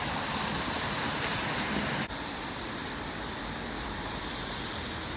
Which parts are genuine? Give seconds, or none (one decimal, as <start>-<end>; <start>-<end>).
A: 0.0-5.2